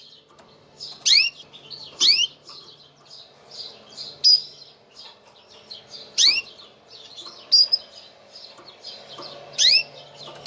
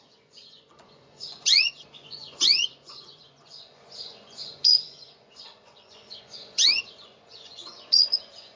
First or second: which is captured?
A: first